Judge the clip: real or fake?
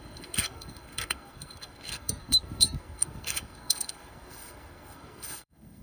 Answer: fake